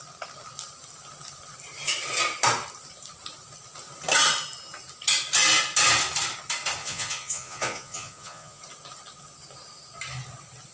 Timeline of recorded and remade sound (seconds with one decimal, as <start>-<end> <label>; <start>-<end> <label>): 0.0-6.8 recorded; 6.8-8.6 remade; 8.6-10.7 recorded